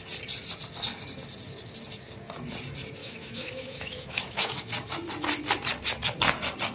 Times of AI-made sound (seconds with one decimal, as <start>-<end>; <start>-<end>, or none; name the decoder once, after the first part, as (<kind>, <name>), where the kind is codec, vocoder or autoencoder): 3.0-4.6 (autoencoder, DAC-VAE)